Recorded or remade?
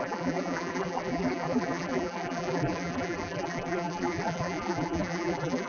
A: remade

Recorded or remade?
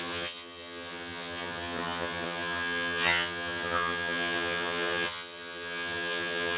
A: remade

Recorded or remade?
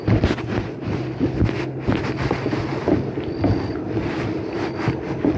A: recorded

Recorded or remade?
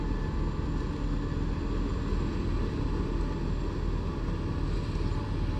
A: recorded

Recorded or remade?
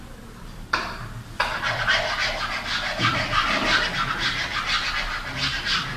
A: recorded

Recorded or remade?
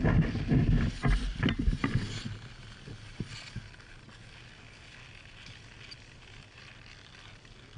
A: recorded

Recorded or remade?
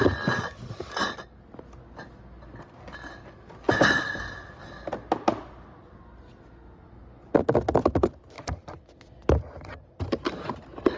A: recorded